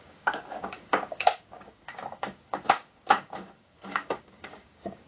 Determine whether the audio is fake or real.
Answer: fake